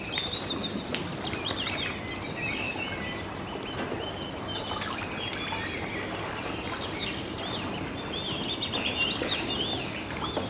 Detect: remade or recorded recorded